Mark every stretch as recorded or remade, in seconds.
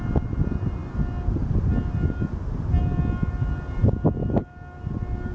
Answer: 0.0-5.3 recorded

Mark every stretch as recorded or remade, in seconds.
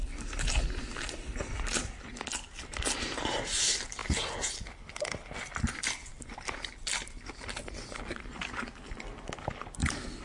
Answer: 0.0-10.2 recorded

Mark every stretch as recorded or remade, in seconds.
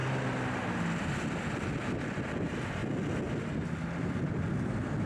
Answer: 0.0-5.1 recorded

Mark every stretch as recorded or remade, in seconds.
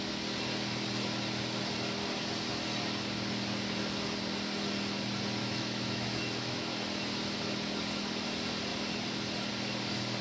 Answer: 0.0-5.4 recorded; 5.4-6.7 remade; 6.7-10.2 recorded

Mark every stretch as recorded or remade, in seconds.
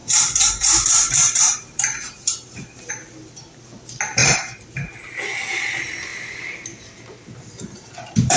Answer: 0.0-2.9 remade; 2.9-4.2 recorded; 4.2-5.6 remade; 5.6-6.1 recorded; 6.1-8.4 remade